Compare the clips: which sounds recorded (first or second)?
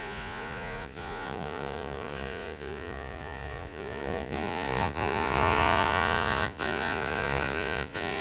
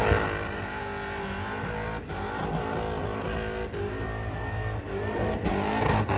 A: second